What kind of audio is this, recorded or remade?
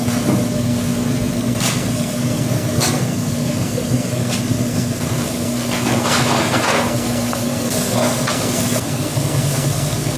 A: remade